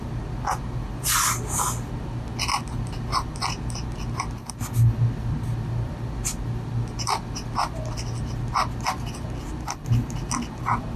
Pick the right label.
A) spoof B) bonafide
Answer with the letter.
B